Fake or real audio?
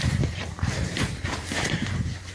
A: real